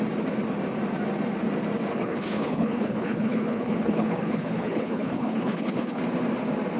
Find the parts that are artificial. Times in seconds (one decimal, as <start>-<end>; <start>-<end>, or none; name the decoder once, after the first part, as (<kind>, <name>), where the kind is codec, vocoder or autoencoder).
1.9-6.0 (codec, HILCodec)